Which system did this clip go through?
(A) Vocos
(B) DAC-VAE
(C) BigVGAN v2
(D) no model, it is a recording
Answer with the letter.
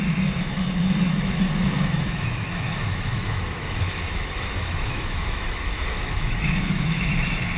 B